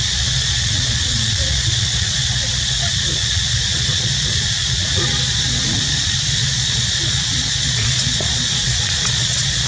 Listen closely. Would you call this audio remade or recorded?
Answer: remade